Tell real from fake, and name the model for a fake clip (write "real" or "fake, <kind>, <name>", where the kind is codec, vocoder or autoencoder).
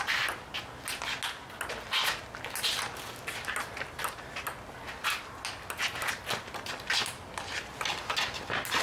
real